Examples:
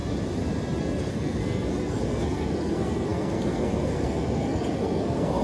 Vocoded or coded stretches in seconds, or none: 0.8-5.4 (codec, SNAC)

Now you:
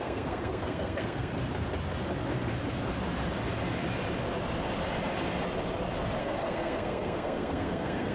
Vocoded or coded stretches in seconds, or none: 0.0-1.3 (codec, SNAC); 6.2-8.1

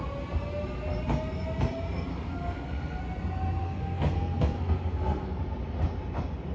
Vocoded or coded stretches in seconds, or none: 2.1-3.0 (codec, SNAC); 3.6-5.4

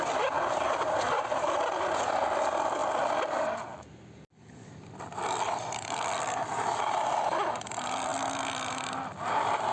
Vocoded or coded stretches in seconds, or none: none

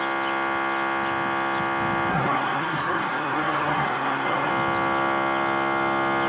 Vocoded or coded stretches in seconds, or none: 2.1-4.5 (codec, SNAC)

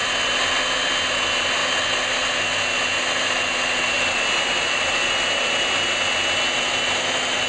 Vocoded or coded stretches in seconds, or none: none

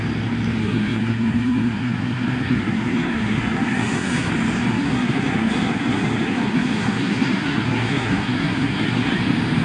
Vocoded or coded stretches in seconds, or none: 0.6-4.3 (codec, SNAC); 4.7-9.2